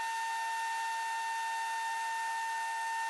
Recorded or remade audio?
recorded